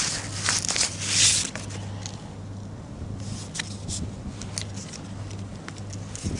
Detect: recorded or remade recorded